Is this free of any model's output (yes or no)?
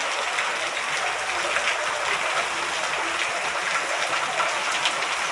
yes